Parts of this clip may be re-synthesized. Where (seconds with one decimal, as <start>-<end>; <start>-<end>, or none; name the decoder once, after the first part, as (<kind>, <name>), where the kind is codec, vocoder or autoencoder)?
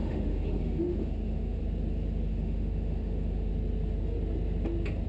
0.0-1.6 (autoencoder, DAC-VAE); 2.3-3.5